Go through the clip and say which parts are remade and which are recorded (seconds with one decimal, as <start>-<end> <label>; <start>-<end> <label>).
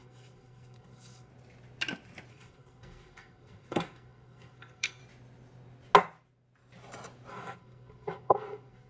0.0-1.3 remade; 1.3-2.3 recorded; 2.3-5.0 remade; 5.0-7.3 recorded; 7.3-8.9 remade